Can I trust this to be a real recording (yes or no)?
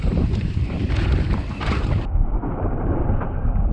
no